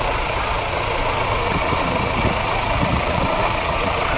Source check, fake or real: fake